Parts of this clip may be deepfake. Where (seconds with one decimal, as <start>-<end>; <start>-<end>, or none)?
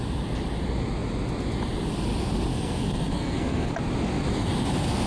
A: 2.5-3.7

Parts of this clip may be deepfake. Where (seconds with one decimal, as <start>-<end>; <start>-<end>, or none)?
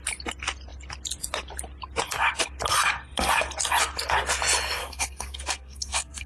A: 4.8-6.3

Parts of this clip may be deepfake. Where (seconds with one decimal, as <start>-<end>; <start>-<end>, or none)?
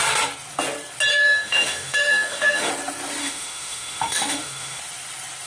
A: 1.1-2.7; 3.2-4.8